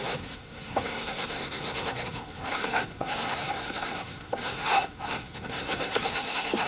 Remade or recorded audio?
remade